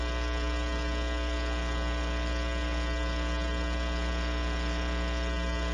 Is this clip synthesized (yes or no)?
no